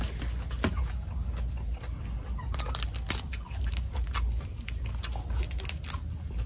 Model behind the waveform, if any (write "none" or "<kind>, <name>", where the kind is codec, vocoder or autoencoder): none